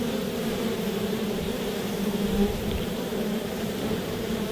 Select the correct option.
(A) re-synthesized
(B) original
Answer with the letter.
A